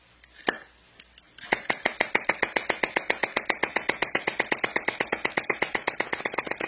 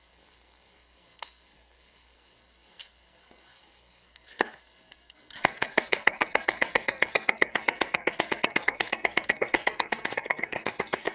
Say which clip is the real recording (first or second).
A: first